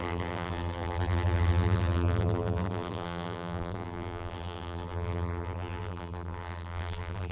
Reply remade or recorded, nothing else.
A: remade